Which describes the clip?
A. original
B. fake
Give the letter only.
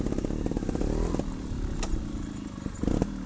A